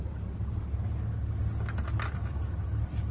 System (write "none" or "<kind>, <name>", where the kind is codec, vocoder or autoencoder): none